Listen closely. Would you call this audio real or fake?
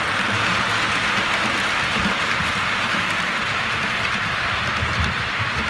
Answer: fake